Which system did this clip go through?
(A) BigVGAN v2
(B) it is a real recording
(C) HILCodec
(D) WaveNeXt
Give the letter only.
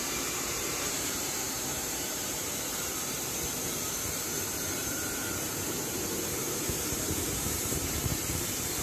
A